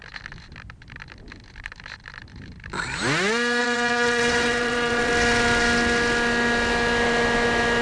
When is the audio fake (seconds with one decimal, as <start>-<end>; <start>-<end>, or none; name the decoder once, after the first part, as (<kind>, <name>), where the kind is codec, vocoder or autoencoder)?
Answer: 3.6-5.1 (vocoder, WaveNeXt)